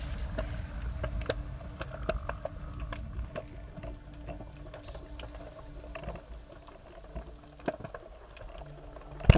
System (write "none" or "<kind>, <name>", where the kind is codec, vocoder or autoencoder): none